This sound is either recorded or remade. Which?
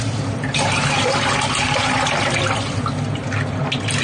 recorded